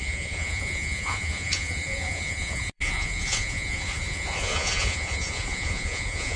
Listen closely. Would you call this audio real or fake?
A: fake